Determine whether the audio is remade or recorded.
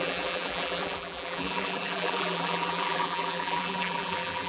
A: remade